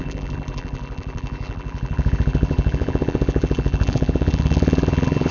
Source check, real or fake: fake